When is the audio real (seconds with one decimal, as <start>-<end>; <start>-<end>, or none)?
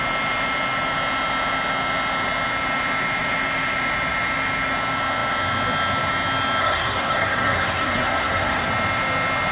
0.0-6.6; 8.7-9.5